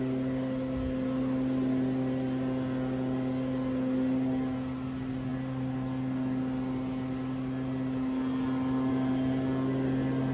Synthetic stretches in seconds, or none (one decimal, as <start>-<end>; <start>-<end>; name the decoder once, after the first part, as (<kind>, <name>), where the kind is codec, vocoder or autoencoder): none